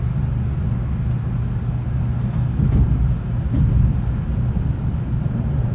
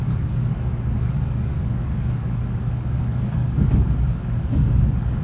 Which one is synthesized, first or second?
second